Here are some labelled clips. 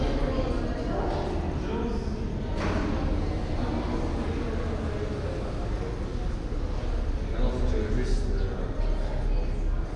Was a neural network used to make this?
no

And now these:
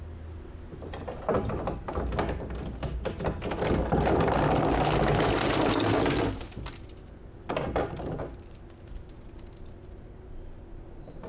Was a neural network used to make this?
no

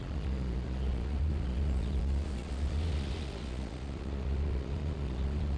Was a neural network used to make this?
yes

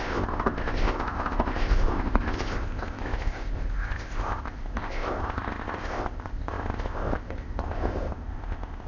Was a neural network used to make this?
yes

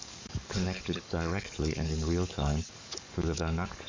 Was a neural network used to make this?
yes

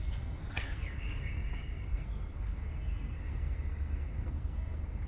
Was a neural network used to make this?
yes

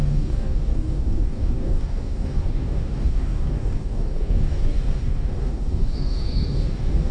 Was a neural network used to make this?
yes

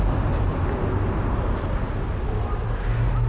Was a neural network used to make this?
no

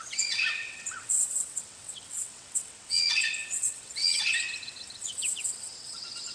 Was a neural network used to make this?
yes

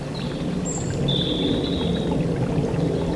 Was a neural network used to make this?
no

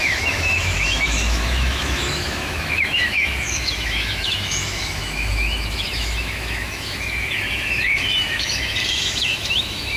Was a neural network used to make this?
yes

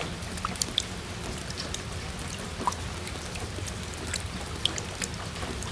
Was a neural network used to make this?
no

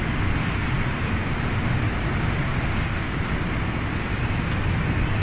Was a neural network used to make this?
no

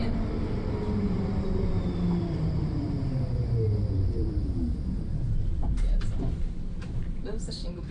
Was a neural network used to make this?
yes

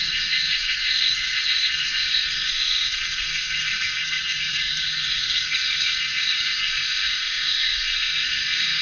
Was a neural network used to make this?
yes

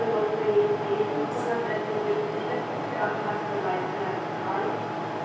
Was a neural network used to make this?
no